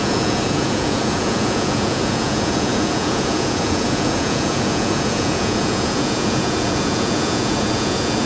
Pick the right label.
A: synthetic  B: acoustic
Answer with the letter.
A